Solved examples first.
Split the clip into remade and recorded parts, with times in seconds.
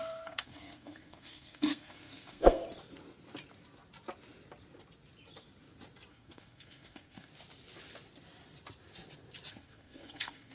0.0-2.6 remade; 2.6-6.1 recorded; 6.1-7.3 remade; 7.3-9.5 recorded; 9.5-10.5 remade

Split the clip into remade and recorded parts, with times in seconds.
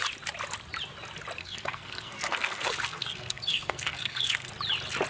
0.0-1.4 recorded; 1.4-4.5 remade; 4.5-5.1 recorded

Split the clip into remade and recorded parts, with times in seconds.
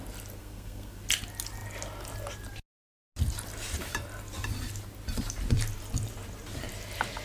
0.0-0.4 recorded; 0.4-1.0 remade; 1.0-7.2 recorded